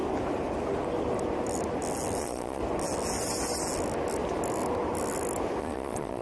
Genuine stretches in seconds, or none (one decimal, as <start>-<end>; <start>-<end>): 0.0-2.2; 2.6-5.6